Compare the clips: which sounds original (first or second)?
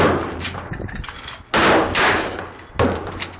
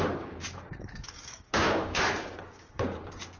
first